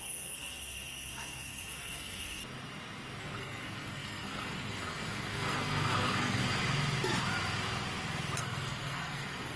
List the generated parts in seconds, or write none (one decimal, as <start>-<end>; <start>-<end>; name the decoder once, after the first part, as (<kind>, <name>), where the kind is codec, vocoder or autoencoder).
0.0-2.4 (codec, SNAC); 3.2-6.4; 8.4-9.6